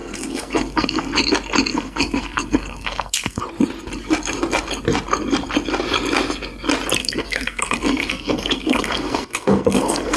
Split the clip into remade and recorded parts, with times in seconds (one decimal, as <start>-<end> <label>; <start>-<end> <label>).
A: 0.0-1.1 remade; 1.1-1.7 recorded; 1.7-3.4 remade; 3.4-7.0 recorded; 7.0-10.2 remade